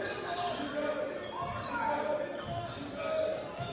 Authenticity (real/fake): real